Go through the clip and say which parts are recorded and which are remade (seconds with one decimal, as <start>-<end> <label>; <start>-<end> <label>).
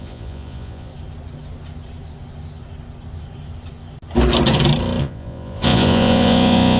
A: 0.0-0.9 remade; 0.9-5.0 recorded; 5.0-6.8 remade